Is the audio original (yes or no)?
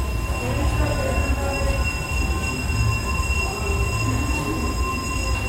yes